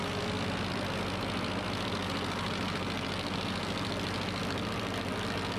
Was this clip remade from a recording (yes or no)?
no